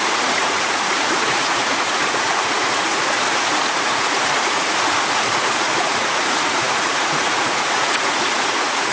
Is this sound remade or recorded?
remade